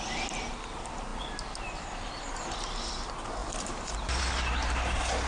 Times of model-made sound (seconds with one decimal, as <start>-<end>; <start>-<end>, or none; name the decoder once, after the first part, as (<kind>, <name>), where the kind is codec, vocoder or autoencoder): none

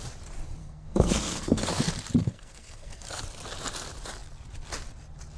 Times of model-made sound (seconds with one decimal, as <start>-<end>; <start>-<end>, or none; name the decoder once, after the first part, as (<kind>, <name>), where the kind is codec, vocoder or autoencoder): 0.6-1.8 (codec, SNAC); 2.2-3.2

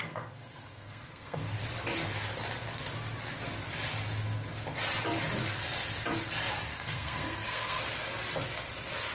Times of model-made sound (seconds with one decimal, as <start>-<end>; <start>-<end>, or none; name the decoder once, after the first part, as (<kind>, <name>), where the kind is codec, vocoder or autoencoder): 0.0-1.4 (codec, SNAC); 6.7-7.8

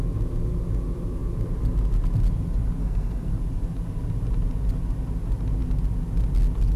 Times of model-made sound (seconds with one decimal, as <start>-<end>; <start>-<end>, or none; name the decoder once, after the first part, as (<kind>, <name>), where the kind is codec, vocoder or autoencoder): 2.8-3.3 (codec, SNAC)